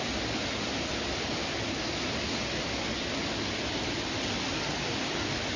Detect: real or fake real